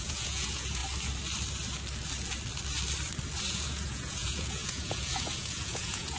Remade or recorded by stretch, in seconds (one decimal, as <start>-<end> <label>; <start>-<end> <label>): 0.0-0.8 remade; 0.8-3.5 recorded; 3.5-6.2 remade